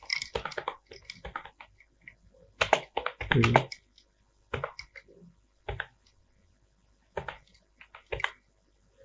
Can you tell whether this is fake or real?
real